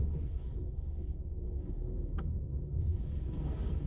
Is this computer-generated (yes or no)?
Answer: yes